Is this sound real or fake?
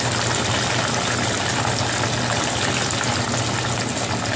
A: real